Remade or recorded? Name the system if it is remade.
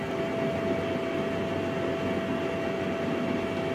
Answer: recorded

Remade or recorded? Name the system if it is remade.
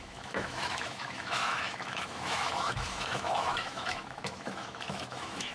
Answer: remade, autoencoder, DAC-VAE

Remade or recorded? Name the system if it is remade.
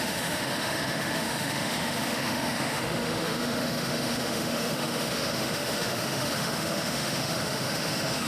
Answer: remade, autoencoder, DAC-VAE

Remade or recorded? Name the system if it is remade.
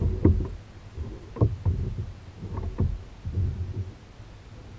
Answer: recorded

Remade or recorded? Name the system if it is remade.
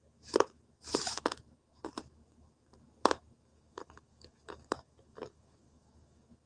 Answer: remade, autoencoder, DAC-VAE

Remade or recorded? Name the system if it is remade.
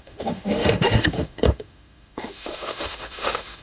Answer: remade, autoencoder, DAC-VAE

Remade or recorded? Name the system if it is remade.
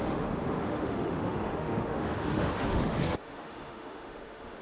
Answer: remade, autoencoder, DAC-VAE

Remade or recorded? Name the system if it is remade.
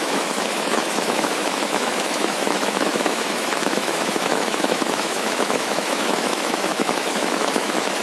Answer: remade, autoencoder, DAC-VAE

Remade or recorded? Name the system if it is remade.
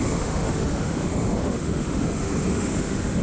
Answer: remade, autoencoder, DAC-VAE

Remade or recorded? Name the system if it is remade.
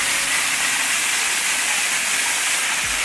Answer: recorded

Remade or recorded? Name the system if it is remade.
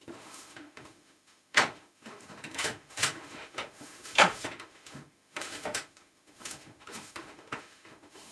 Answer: remade, autoencoder, DAC-VAE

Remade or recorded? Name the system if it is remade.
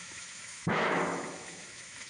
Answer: remade, autoencoder, DAC-VAE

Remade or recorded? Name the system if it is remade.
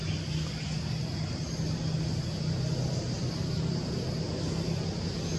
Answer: recorded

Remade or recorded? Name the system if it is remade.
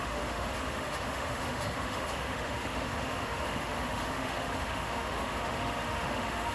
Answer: remade, autoencoder, DAC-VAE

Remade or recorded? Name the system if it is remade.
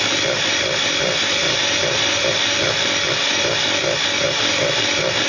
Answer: recorded